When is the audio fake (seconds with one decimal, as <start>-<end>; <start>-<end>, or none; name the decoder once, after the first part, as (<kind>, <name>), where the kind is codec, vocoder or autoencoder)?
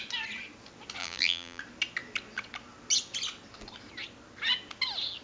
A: 1.0-1.6 (vocoder, BigVGAN v2)